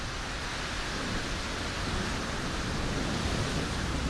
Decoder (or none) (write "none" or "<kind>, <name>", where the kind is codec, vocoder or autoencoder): none